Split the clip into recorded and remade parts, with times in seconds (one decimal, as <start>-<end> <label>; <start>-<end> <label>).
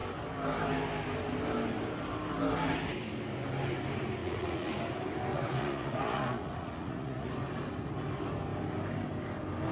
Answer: 0.0-4.2 recorded; 4.2-4.8 remade; 4.8-5.3 recorded; 5.3-7.3 remade; 7.3-9.7 recorded